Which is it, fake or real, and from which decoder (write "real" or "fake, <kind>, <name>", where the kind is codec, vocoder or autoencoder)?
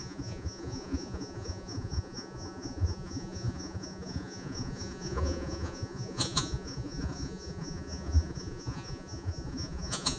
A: fake, vocoder, Vocos